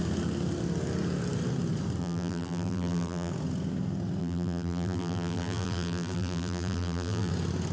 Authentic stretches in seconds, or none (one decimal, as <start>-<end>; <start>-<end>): 0.0-2.0; 3.3-4.2; 7.3-7.7